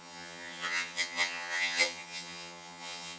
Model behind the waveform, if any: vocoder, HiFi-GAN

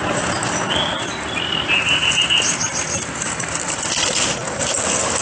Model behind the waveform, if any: none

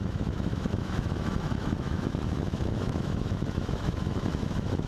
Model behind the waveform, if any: autoencoder, DAC-VAE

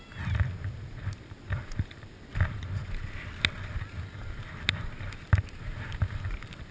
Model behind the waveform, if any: none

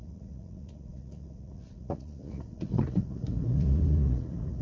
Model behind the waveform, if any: vocoder, Vocos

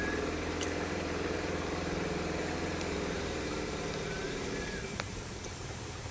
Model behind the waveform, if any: vocoder, BigVGAN v2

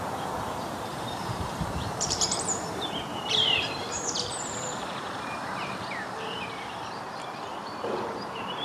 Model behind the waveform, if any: vocoder, BigVGAN v2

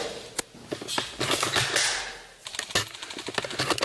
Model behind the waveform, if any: none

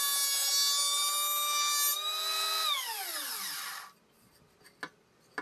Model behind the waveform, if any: none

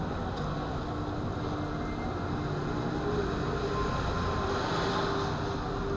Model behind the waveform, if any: none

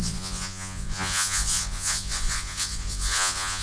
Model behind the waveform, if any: vocoder, Vocos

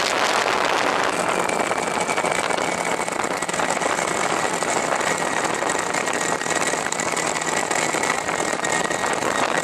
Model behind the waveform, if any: none